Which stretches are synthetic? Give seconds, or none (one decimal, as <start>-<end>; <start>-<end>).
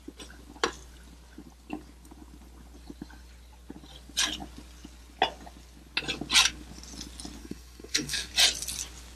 7.4-8.3